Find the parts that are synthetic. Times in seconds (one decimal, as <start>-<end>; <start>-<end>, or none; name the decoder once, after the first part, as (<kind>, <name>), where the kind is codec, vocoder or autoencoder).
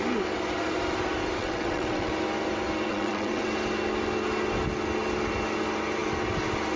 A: 1.4-2.1 (vocoder, WaveNeXt); 2.9-3.5